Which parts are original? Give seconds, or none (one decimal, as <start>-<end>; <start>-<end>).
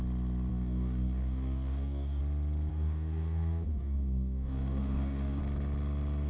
0.0-0.5; 2.2-2.7; 5.4-6.3